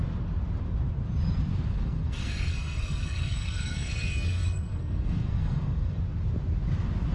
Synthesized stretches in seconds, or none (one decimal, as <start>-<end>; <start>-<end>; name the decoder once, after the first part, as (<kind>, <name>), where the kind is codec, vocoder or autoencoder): 1.7-6.0 (codec, SNAC)